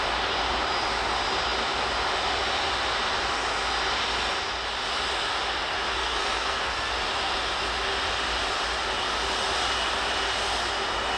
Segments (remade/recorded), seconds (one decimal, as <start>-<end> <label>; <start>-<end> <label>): 0.0-6.0 recorded; 6.0-6.9 remade; 6.9-11.2 recorded